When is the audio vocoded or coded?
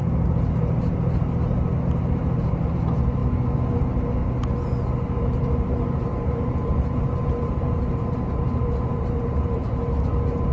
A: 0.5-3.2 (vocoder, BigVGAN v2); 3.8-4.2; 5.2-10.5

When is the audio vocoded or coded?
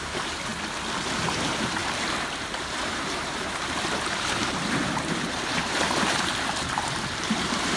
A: 0.0-0.5 (vocoder, BigVGAN v2); 1.2-1.8; 2.6-7.8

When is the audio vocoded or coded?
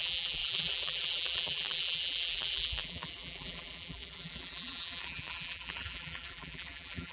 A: 0.0-7.1 (vocoder, BigVGAN v2)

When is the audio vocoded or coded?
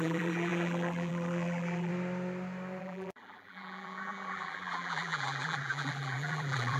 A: 0.0-1.9 (vocoder, BigVGAN v2); 2.8-6.8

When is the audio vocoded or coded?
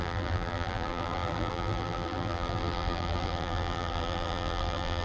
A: 0.0-5.0 (vocoder, BigVGAN v2)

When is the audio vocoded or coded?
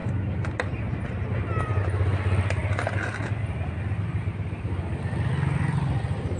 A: none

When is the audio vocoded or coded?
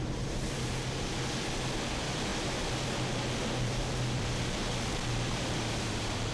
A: 0.0-6.3 (vocoder, BigVGAN v2)